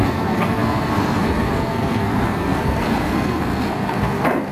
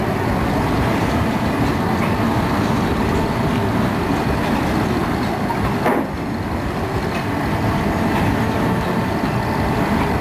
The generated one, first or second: first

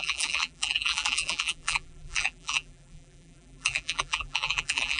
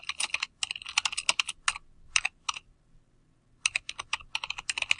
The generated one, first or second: first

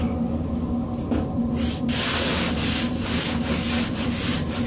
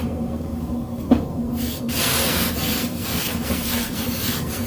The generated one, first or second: second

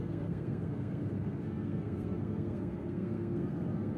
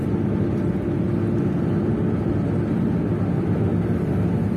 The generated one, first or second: first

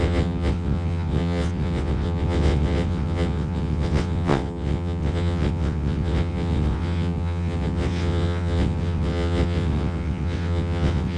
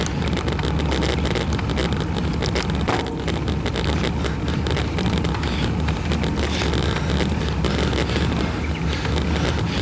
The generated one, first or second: first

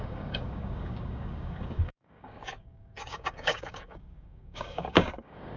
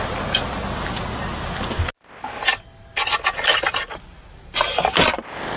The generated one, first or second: first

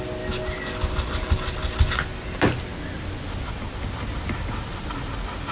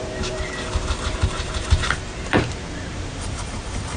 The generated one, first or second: second